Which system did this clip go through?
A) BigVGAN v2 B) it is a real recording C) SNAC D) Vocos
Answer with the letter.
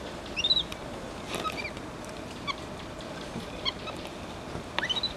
B